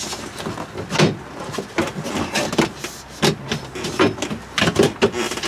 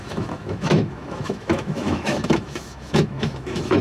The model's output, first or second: second